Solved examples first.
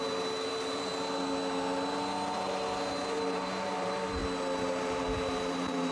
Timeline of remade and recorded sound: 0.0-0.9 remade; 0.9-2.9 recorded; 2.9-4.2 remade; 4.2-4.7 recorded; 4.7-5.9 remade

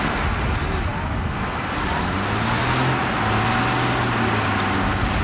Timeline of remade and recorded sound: 0.0-5.2 recorded

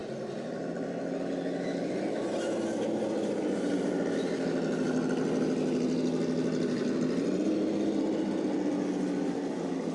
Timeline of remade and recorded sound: 0.0-9.9 recorded

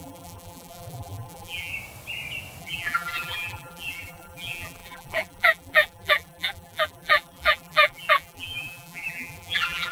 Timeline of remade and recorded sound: 0.0-1.7 remade; 1.7-2.6 recorded; 2.6-9.9 remade

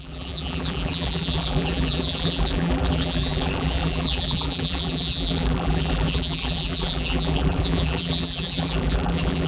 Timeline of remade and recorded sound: 0.0-9.5 remade

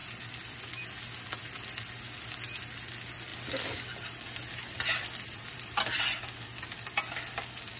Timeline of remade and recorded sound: 0.0-0.6 remade; 0.6-3.3 recorded; 3.3-5.8 remade; 5.8-7.8 recorded